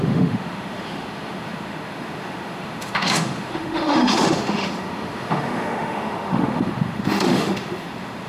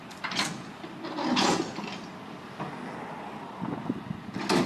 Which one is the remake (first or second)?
first